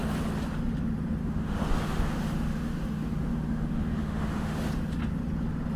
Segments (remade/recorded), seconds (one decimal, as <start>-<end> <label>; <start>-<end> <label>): 0.0-1.2 recorded; 1.2-4.7 remade; 4.7-5.8 recorded